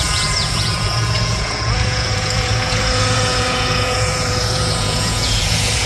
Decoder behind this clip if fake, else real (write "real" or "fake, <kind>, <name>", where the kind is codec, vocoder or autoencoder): fake, vocoder, Vocos